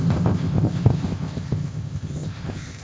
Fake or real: fake